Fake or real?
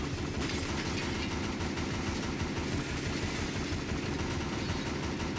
real